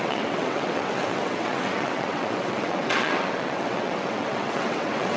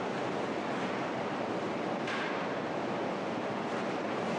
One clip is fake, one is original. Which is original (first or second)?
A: second